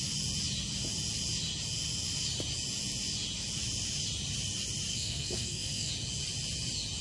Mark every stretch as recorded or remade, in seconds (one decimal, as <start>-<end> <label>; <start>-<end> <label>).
0.0-4.9 recorded; 4.9-5.9 remade; 5.9-7.0 recorded

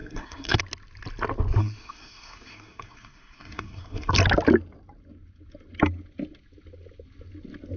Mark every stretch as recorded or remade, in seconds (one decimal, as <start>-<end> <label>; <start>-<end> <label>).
0.0-0.6 remade; 0.6-1.6 recorded; 1.6-4.1 remade; 4.1-7.8 recorded

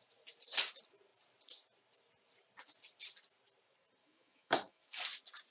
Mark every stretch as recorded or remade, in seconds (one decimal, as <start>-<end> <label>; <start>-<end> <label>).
0.0-4.0 recorded; 4.0-5.0 remade; 5.0-5.5 recorded

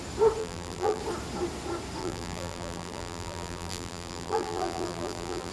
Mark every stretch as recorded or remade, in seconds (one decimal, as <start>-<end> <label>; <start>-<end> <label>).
0.0-0.4 recorded; 0.4-1.0 remade; 1.0-2.0 recorded; 2.0-5.5 remade

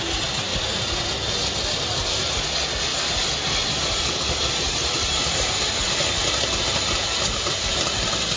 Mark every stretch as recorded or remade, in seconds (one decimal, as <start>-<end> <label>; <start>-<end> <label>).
0.0-8.4 recorded

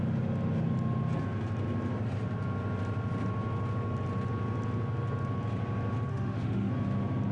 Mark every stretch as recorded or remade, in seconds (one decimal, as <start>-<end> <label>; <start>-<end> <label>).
0.0-6.1 recorded; 6.1-6.7 remade; 6.7-7.3 recorded